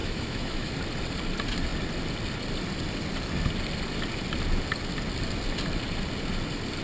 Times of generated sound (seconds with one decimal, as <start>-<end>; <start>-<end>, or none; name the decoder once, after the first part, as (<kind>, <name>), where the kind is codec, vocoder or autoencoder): 0.0-0.7 (autoencoder, DAC-VAE)